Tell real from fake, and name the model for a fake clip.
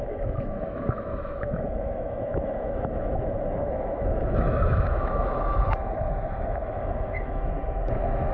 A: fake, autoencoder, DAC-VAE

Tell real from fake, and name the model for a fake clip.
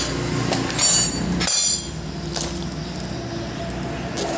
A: real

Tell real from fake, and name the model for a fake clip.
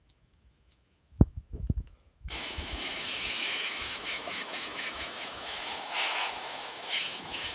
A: fake, autoencoder, DAC-VAE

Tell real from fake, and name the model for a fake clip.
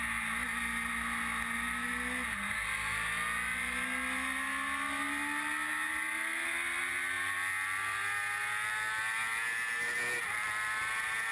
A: real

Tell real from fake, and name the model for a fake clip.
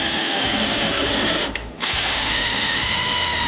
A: fake, autoencoder, DAC-VAE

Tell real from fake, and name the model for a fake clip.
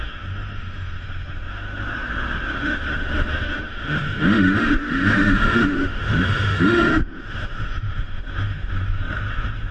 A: fake, autoencoder, DAC-VAE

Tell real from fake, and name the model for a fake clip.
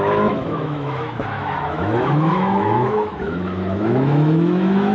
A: fake, autoencoder, DAC-VAE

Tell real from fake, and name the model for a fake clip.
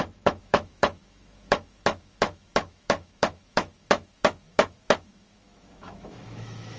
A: fake, autoencoder, DAC-VAE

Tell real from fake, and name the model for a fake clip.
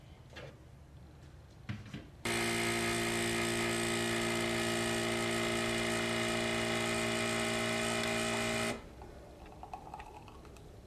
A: real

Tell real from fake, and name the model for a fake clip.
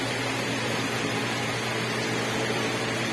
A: real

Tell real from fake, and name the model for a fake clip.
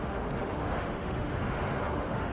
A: fake, autoencoder, DAC-VAE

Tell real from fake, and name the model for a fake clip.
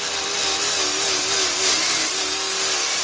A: real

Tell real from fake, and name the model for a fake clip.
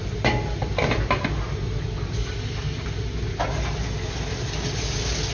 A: real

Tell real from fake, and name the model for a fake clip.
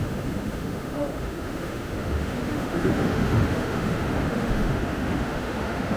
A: fake, autoencoder, DAC-VAE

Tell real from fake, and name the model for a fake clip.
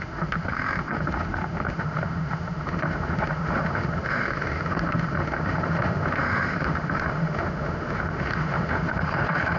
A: fake, autoencoder, DAC-VAE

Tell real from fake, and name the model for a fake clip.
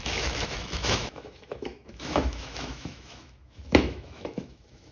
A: fake, autoencoder, DAC-VAE